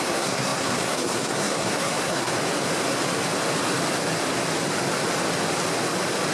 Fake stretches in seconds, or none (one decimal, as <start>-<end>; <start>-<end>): 0.0-2.3